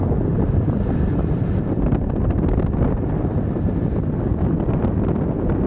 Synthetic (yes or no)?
no